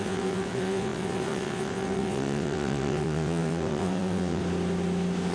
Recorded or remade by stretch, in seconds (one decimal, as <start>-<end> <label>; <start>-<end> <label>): 0.0-4.4 remade; 4.4-5.3 recorded